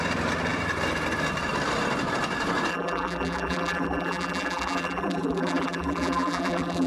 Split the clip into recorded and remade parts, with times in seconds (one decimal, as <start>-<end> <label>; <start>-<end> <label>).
0.0-2.7 recorded; 2.7-6.9 remade